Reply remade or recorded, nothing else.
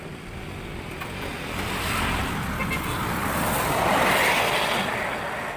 recorded